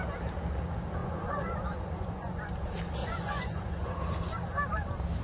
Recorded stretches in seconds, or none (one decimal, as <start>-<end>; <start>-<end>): 0.0-1.0; 2.5-3.0; 3.9-5.2